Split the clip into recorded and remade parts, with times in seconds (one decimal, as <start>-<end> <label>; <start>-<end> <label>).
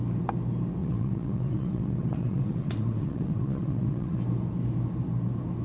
0.0-0.8 recorded; 0.8-4.2 remade; 4.2-5.6 recorded